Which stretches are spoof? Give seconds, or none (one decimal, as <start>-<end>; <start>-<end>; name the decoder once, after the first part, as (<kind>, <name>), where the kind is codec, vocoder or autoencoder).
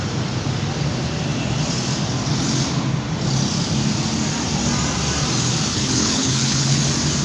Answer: 5.7-6.8 (codec, HILCodec)